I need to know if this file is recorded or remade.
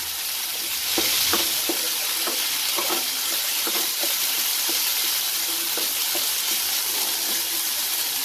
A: remade